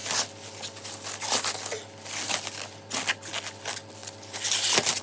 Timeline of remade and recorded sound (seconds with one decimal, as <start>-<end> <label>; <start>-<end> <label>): 0.0-5.0 recorded